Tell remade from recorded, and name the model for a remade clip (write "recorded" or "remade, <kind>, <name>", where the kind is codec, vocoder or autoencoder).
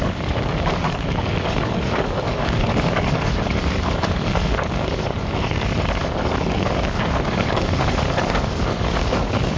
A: remade, codec, DAC